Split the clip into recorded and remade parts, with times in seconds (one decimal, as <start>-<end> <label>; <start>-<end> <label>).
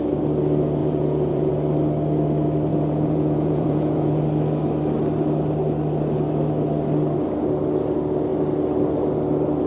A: 0.0-0.8 recorded; 0.8-1.5 remade; 1.5-2.7 recorded; 2.7-4.2 remade; 4.2-9.7 recorded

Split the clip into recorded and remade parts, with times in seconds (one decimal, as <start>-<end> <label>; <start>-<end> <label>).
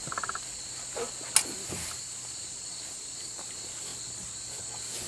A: 0.0-5.1 recorded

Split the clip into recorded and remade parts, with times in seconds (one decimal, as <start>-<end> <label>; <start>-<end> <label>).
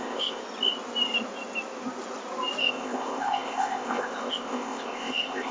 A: 0.0-0.4 remade; 0.4-2.6 recorded; 2.6-5.5 remade